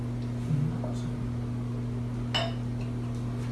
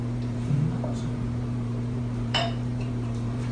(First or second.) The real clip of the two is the first